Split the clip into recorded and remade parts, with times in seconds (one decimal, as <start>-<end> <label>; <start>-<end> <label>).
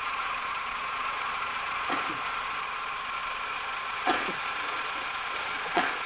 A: 0.0-6.1 remade